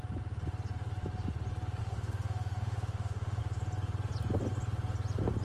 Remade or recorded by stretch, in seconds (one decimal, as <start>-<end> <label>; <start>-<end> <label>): 0.0-1.8 recorded; 1.8-3.4 remade; 3.4-5.4 recorded